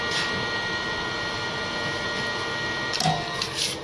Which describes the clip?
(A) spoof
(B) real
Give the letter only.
B